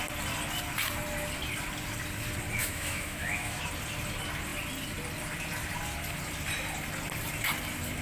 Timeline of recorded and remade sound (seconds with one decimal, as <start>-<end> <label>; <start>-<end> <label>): 0.0-2.6 recorded; 2.6-3.6 remade; 3.6-8.0 recorded